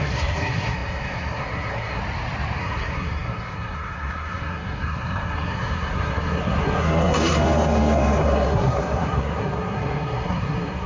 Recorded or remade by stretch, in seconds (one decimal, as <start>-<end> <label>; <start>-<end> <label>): 0.0-2.0 remade; 2.0-2.6 recorded; 2.6-10.9 remade